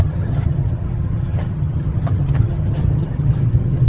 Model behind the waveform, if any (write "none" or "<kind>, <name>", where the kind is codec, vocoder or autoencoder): vocoder, HiFi-GAN